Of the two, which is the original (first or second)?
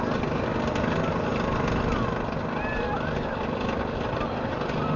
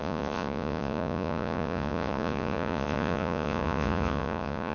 first